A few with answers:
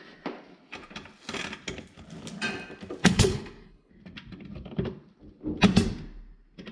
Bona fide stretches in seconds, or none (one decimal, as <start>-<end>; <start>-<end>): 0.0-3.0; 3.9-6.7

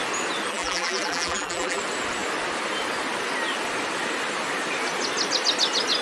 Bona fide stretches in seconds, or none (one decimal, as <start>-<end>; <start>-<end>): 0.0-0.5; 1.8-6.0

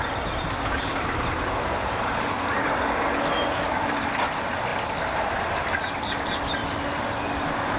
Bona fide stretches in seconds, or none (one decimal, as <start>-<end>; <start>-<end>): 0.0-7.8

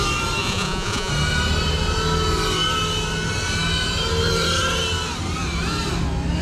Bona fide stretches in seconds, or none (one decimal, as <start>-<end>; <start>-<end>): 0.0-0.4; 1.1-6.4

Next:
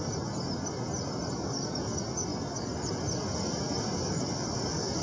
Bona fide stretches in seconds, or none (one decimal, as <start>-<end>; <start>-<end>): 0.0-5.0